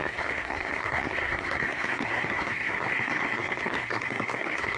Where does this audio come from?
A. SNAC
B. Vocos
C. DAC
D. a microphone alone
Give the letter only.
A